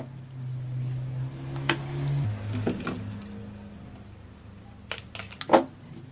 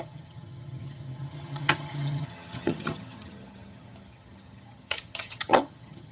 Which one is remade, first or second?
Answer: second